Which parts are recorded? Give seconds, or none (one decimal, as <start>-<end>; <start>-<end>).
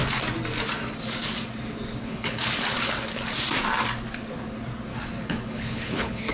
0.0-2.0; 2.6-5.2